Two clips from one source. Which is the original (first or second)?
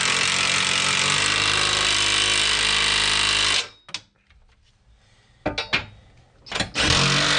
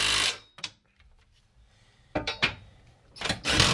first